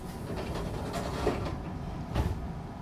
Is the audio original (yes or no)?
no